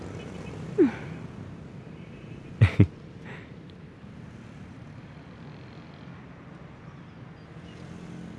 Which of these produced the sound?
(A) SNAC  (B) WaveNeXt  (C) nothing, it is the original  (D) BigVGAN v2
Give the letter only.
C